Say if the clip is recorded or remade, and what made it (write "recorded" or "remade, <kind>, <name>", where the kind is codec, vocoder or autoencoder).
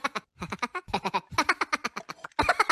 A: recorded